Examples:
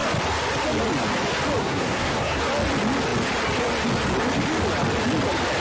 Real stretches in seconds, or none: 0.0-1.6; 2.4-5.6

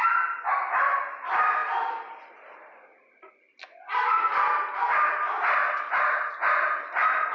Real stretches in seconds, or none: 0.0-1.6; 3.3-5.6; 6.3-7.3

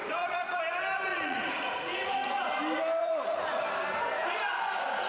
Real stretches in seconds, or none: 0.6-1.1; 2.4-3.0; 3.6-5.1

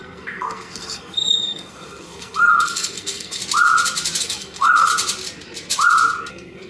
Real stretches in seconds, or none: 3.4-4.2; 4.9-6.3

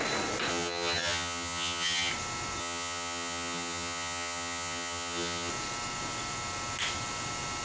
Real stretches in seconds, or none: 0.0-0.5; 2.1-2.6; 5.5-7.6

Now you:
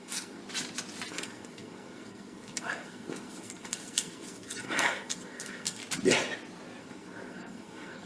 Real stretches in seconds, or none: 0.4-1.1; 5.8-6.8